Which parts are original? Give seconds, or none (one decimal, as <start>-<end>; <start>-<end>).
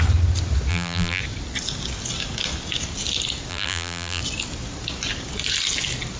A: 0.0-0.7; 1.2-3.5; 4.2-6.2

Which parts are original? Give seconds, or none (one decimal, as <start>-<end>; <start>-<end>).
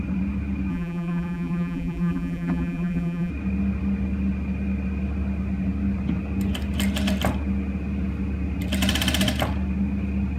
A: 0.0-0.7; 3.3-10.4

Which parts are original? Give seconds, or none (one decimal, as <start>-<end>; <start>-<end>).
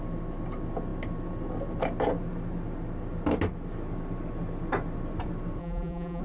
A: 0.0-5.6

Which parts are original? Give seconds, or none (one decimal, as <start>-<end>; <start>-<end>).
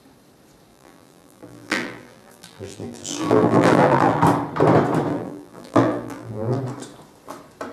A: 0.0-0.7; 4.2-5.1; 6.6-7.7